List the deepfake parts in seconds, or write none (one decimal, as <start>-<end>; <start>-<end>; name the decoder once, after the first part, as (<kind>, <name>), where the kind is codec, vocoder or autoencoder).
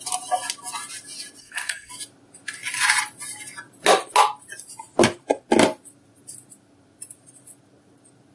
1.4-1.9 (codec, SNAC)